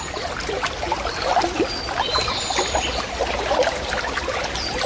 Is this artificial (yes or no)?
yes